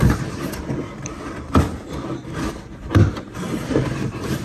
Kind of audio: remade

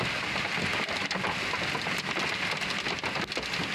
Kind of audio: recorded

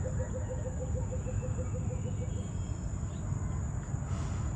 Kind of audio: recorded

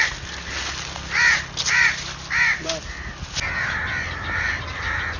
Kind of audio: recorded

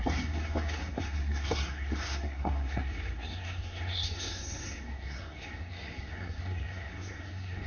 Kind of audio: remade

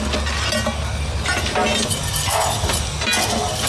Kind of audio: recorded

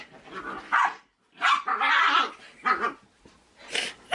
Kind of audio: recorded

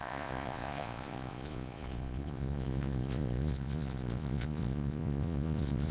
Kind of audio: remade